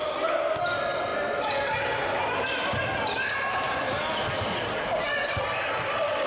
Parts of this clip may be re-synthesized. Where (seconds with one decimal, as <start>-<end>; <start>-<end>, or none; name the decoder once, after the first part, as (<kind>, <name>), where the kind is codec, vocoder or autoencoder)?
none